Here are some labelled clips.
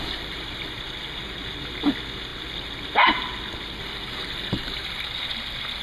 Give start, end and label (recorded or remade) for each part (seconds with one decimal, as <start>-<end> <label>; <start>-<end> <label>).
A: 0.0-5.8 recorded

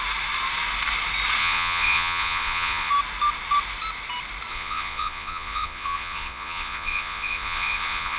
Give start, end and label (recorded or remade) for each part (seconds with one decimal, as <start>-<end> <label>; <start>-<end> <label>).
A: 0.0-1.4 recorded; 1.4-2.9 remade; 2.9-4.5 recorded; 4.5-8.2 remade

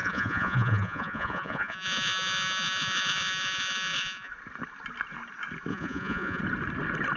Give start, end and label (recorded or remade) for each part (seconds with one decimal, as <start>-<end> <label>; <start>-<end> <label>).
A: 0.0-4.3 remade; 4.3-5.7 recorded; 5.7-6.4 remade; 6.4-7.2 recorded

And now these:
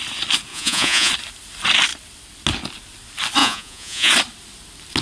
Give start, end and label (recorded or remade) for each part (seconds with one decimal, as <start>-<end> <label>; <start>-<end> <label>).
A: 0.0-0.5 recorded; 0.5-1.1 remade; 1.1-3.4 recorded; 3.4-4.1 remade; 4.1-5.0 recorded

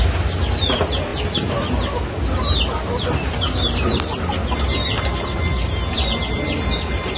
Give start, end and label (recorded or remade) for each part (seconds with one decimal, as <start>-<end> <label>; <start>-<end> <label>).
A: 0.0-7.2 recorded

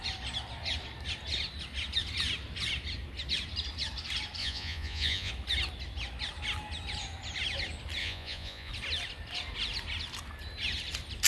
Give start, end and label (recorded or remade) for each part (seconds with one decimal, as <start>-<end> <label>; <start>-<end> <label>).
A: 0.0-4.4 recorded; 4.4-5.3 remade; 5.3-8.0 recorded; 8.0-8.7 remade; 8.7-11.3 recorded

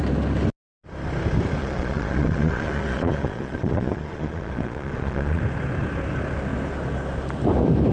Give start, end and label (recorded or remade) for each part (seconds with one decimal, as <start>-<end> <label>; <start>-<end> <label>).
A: 0.0-1.6 recorded; 1.6-5.4 remade; 5.4-7.9 recorded

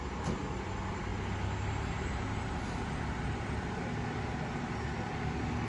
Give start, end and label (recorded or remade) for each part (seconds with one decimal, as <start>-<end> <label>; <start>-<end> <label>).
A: 0.0-5.7 recorded